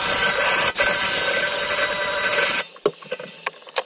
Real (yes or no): yes